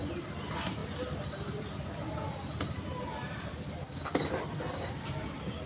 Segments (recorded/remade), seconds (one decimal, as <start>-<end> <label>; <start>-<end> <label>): 0.0-5.7 recorded

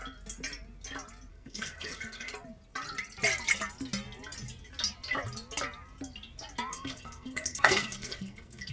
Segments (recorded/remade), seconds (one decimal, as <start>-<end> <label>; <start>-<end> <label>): 0.0-1.3 recorded; 1.3-2.3 remade; 2.3-6.7 recorded; 6.7-8.7 remade

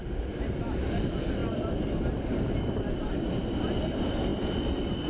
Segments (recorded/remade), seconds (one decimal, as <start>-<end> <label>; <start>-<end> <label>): 0.0-5.1 recorded

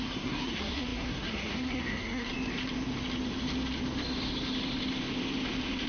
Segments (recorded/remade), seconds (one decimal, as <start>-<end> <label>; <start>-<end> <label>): 0.0-2.3 remade; 2.3-5.9 recorded

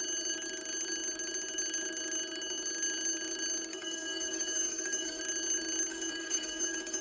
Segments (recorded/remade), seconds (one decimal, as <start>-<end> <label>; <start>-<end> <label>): 0.0-3.7 recorded; 3.7-5.2 remade; 5.2-5.9 recorded; 5.9-7.0 remade